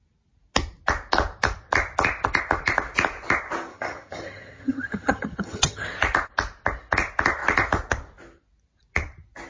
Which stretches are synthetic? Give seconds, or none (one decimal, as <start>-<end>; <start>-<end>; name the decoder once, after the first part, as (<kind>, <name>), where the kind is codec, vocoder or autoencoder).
3.7-5.9 (vocoder, HiFi-GAN)